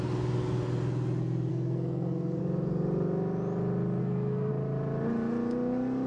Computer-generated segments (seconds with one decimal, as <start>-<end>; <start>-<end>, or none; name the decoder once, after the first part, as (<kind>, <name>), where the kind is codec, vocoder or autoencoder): 1.5-2.4 (codec, SNAC); 4.0-4.5